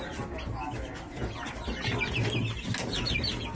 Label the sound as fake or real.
real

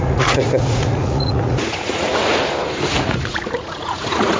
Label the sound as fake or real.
fake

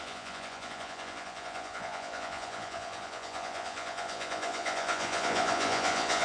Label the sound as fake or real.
fake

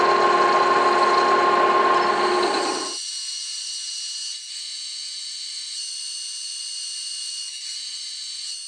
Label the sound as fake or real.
real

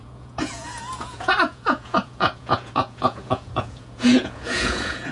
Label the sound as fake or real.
fake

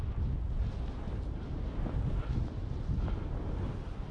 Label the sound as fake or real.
real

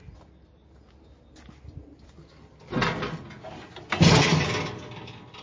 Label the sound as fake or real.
real